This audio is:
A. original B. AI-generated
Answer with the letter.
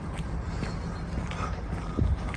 A